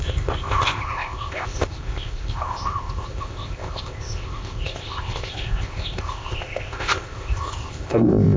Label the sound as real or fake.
fake